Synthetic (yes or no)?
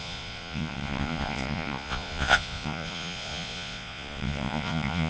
yes